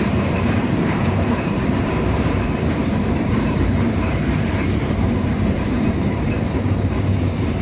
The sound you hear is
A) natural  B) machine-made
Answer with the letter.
B